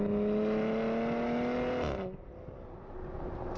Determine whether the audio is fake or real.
real